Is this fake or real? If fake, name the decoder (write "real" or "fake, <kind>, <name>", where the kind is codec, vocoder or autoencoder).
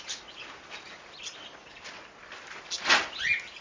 real